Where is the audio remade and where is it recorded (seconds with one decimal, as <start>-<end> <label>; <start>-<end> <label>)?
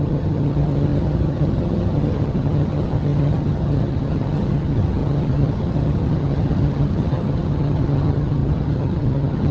0.0-9.5 remade